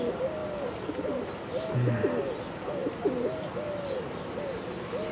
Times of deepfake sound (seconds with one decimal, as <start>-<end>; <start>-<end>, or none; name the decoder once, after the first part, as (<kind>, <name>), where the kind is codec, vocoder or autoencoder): 0.4-1.2 (vocoder, BigVGAN v2); 2.8-3.7

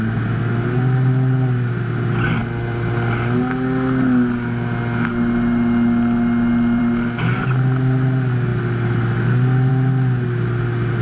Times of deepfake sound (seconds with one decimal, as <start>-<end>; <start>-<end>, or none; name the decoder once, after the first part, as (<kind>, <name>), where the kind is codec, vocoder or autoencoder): none

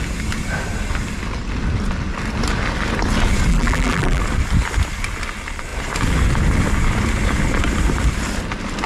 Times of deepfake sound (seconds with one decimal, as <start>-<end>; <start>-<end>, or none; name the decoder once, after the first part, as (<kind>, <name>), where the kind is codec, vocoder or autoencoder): 3.5-4.2 (vocoder, BigVGAN v2)

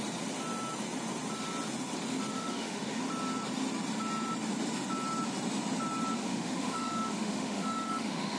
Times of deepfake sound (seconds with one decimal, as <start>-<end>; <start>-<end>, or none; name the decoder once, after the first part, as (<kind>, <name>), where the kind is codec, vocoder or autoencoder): 2.3-3.0 (autoencoder, DAC-VAE); 6.2-8.4

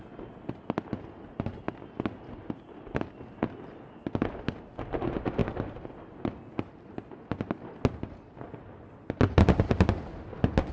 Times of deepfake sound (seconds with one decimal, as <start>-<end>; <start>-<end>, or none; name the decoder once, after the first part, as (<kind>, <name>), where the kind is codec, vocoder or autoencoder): none

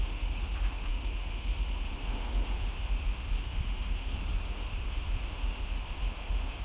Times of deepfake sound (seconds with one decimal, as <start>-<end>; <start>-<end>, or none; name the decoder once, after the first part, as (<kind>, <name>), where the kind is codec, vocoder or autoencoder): 0.0-6.6 (autoencoder, DAC-VAE)

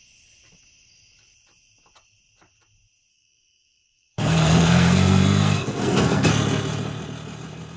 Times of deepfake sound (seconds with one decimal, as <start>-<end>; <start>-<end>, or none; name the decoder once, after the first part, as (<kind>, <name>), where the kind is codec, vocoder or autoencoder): 3.1-6.3 (codec, SNAC)